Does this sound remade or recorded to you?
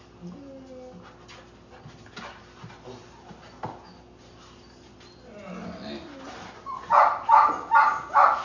recorded